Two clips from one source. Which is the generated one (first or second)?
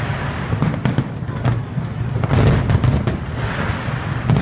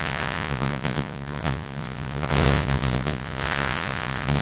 second